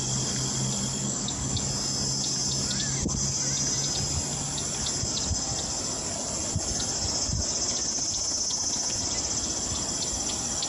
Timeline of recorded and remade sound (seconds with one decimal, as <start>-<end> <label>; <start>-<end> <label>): 0.0-0.9 recorded; 0.9-1.5 remade; 1.5-10.7 recorded